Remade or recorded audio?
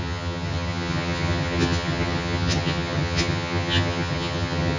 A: remade